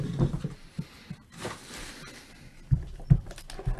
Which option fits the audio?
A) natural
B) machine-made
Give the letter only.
A